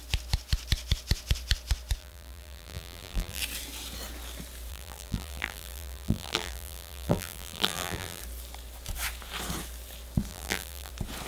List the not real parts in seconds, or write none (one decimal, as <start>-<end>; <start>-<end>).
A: 2.0-3.4; 4.7-8.2; 10.3-10.9